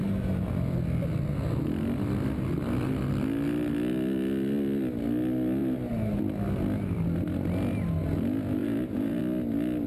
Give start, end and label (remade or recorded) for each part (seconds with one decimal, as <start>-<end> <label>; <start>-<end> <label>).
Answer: 0.0-5.6 recorded; 5.6-6.2 remade; 6.2-8.6 recorded; 8.6-9.2 remade; 9.2-9.9 recorded